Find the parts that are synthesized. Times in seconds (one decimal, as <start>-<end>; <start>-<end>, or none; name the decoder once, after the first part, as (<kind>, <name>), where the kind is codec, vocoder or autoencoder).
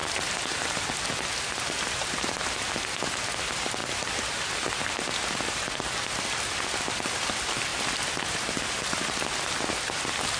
0.0-3.8 (vocoder, BigVGAN v2); 6.8-7.7; 8.2-10.4